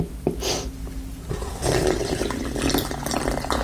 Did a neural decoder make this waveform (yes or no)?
no